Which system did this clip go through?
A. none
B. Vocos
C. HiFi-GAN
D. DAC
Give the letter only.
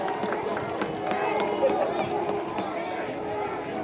A